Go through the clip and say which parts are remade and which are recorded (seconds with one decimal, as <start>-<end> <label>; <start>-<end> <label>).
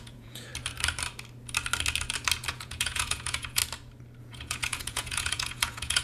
0.0-0.5 remade; 0.5-2.5 recorded; 2.5-3.6 remade; 3.6-4.2 recorded; 4.2-6.0 remade